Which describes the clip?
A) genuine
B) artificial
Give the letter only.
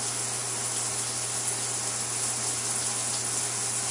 A